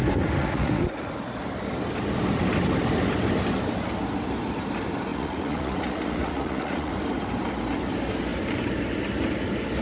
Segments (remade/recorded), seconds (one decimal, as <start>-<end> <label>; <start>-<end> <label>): 0.0-0.4 recorded; 0.4-1.1 remade; 1.1-5.1 recorded; 5.1-6.9 remade; 6.9-9.8 recorded